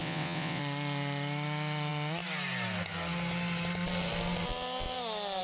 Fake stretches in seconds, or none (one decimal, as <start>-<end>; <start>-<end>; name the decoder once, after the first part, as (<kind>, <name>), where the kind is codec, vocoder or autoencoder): 0.0-0.6 (vocoder, WaveNeXt)